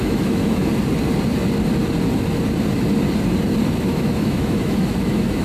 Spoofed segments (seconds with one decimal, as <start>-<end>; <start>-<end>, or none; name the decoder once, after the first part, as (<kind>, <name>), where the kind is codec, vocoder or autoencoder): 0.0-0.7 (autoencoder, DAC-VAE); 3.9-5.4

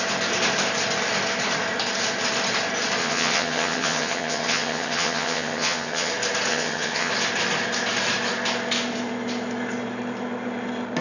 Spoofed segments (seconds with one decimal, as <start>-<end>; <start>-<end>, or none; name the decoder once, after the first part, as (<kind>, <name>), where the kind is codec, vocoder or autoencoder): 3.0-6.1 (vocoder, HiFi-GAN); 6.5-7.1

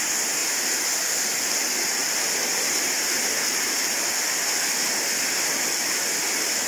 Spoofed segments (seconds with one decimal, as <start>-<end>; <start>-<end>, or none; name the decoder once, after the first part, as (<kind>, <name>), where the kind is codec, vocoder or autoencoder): none

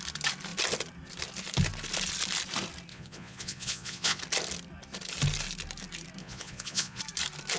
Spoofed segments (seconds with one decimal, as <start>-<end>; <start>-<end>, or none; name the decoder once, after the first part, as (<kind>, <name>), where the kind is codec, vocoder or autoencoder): 2.9-4.2 (vocoder, Vocos); 6.2-7.0